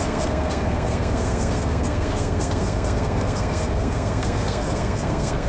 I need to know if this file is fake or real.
fake